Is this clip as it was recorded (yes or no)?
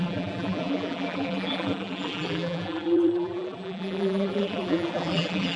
no